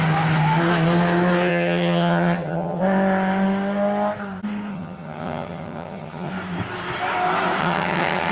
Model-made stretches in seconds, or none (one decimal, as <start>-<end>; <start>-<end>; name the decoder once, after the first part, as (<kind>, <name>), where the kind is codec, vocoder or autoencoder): 1.5-2.8 (vocoder, HiFi-GAN); 4.7-6.3; 7.6-8.3